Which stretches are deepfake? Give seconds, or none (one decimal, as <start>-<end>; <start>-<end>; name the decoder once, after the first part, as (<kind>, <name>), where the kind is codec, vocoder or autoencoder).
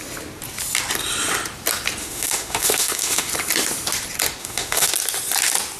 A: 2.0-3.3 (autoencoder, DAC-VAE); 4.4-4.9